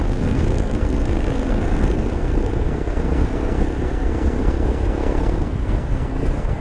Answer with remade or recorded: remade